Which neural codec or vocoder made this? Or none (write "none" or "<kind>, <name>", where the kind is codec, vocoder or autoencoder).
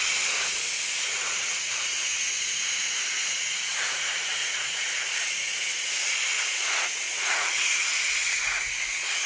vocoder, Vocos